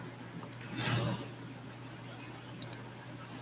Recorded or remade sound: recorded